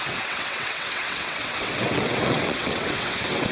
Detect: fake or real fake